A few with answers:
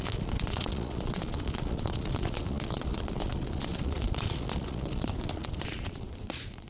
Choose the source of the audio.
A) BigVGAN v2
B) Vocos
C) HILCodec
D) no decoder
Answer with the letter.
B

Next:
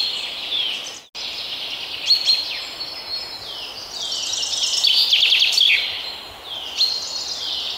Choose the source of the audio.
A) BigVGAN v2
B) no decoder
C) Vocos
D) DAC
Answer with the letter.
B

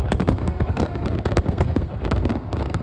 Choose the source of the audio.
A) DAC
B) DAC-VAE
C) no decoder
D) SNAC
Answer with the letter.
D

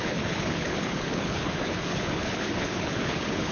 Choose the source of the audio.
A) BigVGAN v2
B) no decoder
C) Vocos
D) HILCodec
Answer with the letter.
D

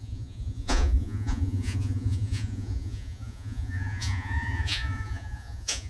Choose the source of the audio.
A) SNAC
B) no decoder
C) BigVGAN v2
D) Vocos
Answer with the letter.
D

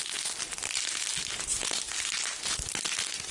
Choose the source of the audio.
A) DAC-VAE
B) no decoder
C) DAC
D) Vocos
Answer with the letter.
B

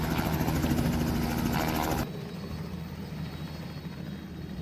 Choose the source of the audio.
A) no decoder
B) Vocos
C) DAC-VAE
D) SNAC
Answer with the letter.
A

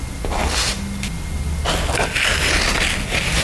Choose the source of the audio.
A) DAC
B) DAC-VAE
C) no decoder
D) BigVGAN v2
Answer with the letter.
C